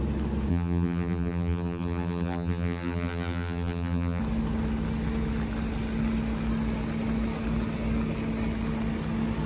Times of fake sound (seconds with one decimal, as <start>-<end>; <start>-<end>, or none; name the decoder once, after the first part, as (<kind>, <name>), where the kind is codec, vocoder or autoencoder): 0.5-4.2 (vocoder, BigVGAN v2)